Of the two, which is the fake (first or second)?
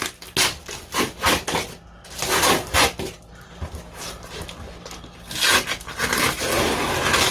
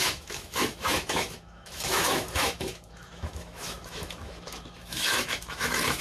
second